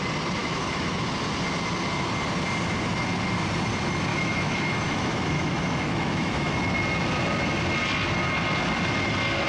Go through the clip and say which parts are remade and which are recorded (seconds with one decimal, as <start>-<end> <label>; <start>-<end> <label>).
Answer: 0.0-0.4 recorded; 0.4-1.1 remade; 1.1-4.1 recorded; 4.1-6.5 remade; 6.5-9.5 recorded